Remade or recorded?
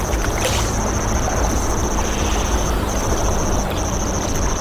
recorded